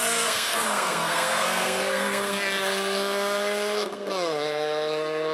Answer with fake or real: fake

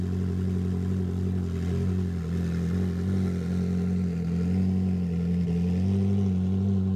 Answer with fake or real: real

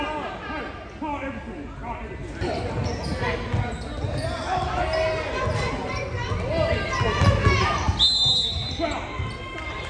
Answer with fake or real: real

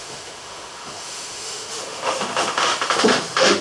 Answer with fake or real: fake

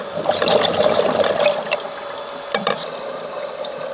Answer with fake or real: fake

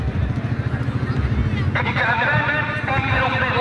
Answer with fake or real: real